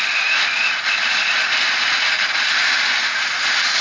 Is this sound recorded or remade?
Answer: recorded